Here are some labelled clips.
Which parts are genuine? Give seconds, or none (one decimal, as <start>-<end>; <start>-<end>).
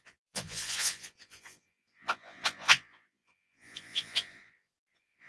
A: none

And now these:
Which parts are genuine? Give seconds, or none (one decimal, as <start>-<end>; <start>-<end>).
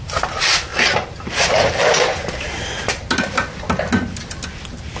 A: 0.0-0.7; 3.1-5.0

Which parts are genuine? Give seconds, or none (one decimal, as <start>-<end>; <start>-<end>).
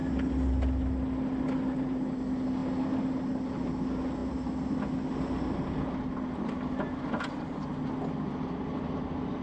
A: 0.0-9.4